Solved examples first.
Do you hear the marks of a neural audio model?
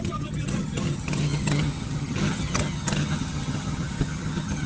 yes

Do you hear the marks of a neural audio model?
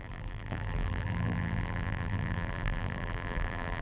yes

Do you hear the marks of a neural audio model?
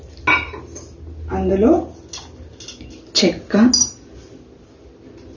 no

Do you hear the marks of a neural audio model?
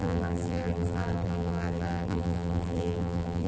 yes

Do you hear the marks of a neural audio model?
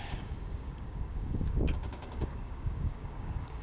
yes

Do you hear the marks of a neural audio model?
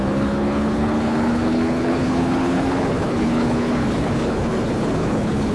yes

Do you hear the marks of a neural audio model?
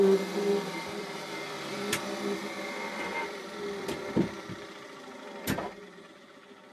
yes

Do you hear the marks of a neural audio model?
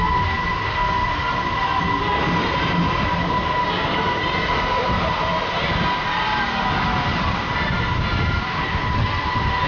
no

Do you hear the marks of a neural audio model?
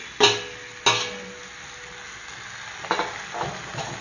no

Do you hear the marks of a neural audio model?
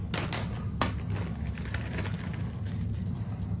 no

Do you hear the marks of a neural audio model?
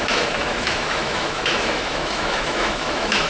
yes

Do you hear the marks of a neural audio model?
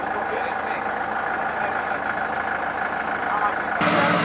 no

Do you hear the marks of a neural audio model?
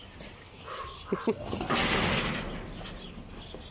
no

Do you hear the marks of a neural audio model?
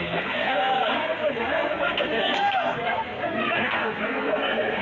yes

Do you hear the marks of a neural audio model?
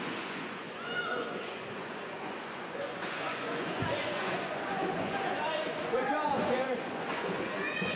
yes